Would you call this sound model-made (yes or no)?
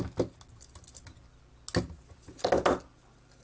no